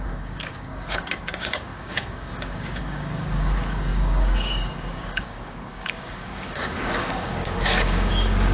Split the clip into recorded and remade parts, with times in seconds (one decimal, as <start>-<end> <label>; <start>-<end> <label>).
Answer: 0.0-8.5 remade